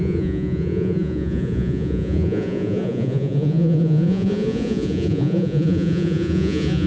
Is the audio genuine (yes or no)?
no